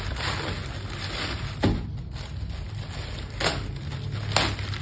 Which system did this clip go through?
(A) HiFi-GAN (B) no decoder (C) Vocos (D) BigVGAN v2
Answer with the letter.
B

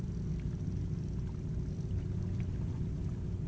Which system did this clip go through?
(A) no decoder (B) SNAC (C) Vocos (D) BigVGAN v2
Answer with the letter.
A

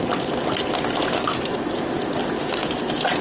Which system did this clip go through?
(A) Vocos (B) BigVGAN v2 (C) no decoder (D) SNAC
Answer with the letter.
C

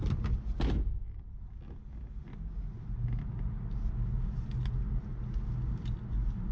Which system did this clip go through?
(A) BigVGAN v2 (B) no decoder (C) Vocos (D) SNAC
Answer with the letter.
B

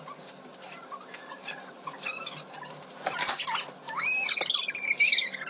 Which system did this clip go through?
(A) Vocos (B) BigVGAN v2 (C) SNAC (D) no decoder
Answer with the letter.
D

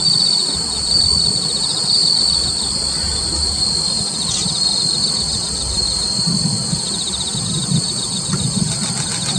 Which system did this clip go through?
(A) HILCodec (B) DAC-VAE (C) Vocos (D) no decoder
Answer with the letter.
D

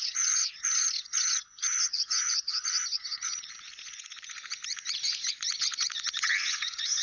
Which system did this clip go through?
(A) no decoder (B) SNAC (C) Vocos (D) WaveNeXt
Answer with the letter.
C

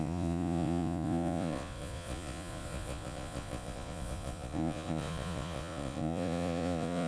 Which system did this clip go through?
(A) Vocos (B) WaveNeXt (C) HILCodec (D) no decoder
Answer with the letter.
A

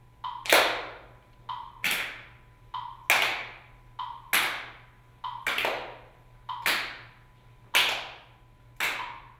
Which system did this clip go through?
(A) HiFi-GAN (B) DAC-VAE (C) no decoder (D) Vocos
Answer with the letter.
C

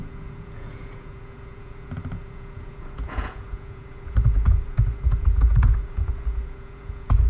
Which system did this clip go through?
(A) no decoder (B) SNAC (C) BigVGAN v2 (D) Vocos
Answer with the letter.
D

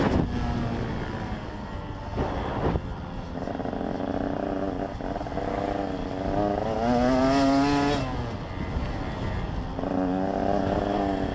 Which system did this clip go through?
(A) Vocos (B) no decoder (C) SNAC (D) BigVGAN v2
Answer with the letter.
B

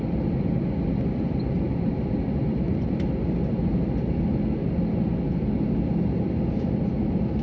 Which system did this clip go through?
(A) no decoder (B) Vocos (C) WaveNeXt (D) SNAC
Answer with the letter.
A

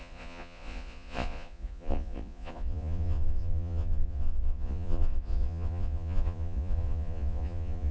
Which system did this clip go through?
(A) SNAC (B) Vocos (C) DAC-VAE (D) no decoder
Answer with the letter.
B